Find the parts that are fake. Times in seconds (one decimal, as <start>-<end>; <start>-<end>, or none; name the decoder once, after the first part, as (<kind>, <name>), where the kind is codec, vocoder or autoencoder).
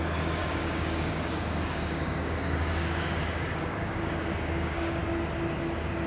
0.0-5.0 (codec, DAC)